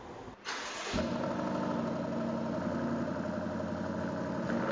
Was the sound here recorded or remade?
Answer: recorded